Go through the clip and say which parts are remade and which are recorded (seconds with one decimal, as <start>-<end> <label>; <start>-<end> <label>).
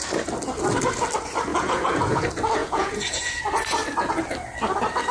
0.0-1.5 recorded; 1.5-2.2 remade; 2.2-2.6 recorded; 2.6-3.4 remade; 3.4-5.1 recorded